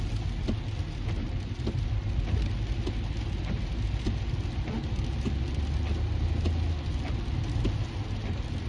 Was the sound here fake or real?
real